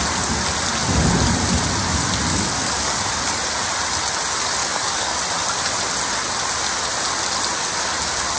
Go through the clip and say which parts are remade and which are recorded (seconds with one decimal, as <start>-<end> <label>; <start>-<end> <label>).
0.0-2.3 recorded; 2.3-3.0 remade; 3.0-4.6 recorded; 4.6-5.2 remade; 5.2-8.4 recorded